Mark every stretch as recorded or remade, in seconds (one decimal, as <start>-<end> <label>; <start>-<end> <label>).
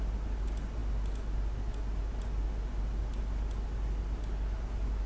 0.0-5.1 recorded